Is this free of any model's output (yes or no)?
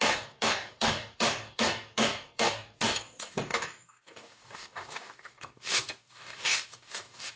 no